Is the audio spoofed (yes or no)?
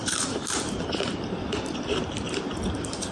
yes